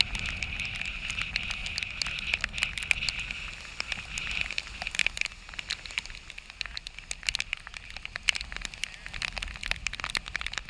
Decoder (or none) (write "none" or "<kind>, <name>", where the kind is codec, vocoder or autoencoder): none